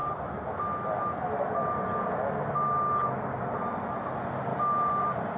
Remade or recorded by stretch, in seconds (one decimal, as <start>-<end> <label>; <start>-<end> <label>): 0.0-4.5 recorded; 4.5-5.4 remade